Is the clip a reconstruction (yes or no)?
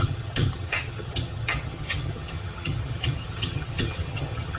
yes